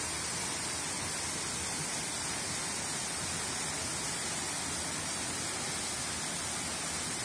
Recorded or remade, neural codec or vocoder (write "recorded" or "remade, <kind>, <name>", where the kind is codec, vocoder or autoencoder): recorded